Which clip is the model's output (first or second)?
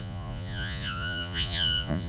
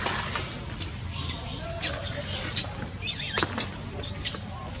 first